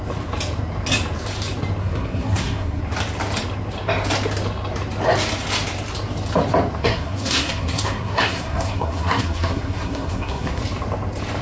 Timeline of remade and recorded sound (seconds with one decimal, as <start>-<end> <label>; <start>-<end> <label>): 0.0-1.8 recorded; 1.8-2.8 remade; 2.8-6.8 recorded; 6.8-10.6 remade; 10.6-11.4 recorded